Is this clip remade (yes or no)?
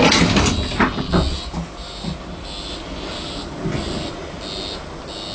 no